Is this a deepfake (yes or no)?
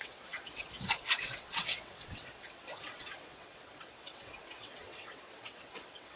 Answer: yes